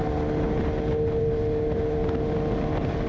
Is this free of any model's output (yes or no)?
yes